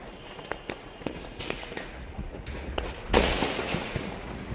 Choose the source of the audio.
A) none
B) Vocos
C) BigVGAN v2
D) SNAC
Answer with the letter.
B